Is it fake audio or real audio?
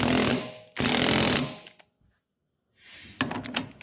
real